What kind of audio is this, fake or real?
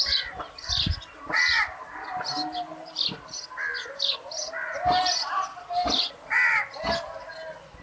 real